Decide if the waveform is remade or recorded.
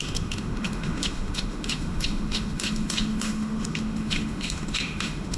remade